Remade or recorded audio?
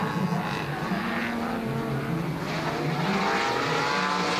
recorded